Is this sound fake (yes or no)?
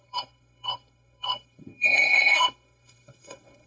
yes